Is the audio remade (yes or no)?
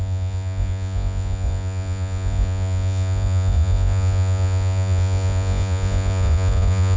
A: yes